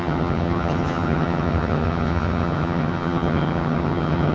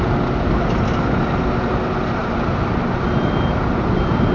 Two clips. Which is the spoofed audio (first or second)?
first